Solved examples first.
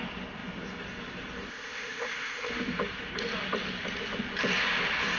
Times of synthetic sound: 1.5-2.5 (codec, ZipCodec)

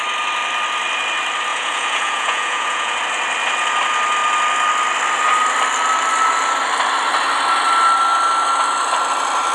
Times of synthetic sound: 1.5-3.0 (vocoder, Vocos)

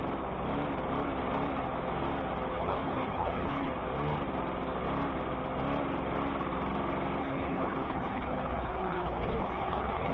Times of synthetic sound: 2.5-3.7 (codec, HILCodec); 7.2-10.1

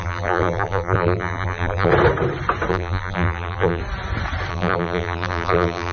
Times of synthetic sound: 0.0-1.9 (vocoder, BigVGAN v2); 2.7-3.8; 4.5-5.9